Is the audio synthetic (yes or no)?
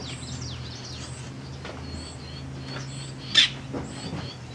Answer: no